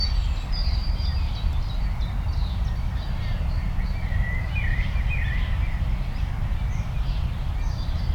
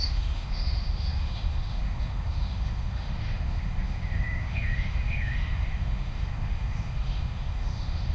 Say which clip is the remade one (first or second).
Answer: second